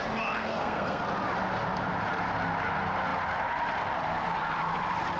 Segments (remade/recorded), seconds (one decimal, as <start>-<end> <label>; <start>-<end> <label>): 0.0-0.4 recorded; 0.4-1.0 remade; 1.0-5.2 recorded

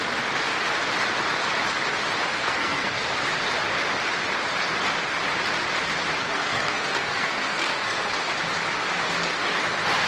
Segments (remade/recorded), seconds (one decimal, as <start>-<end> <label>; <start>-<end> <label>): 0.0-2.4 recorded; 2.4-3.0 remade; 3.0-6.2 recorded; 6.2-8.1 remade; 8.1-10.1 recorded

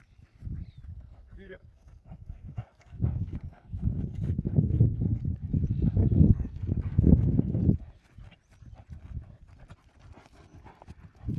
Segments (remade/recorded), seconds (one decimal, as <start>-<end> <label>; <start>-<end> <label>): 0.0-0.9 recorded; 0.9-5.2 remade; 5.2-6.0 recorded; 6.0-7.6 remade; 7.6-11.4 recorded

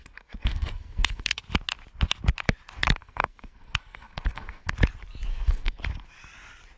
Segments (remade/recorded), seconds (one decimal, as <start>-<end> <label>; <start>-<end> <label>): 0.0-1.4 remade; 1.4-3.0 recorded; 3.0-4.7 remade; 4.7-5.3 recorded; 5.3-5.8 remade; 5.8-6.8 recorded

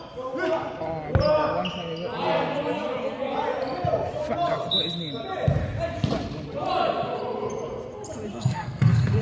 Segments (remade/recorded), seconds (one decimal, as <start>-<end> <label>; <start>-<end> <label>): 0.0-8.3 recorded; 8.3-9.2 remade